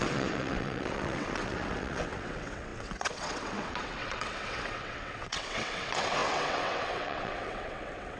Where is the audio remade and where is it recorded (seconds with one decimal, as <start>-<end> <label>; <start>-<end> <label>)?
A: 0.0-8.2 remade